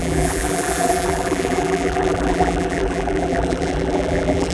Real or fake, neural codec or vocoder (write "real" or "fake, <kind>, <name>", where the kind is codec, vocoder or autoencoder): fake, vocoder, BigVGAN v2